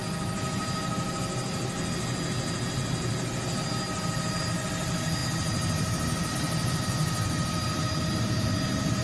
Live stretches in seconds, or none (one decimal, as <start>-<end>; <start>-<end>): 0.0-9.0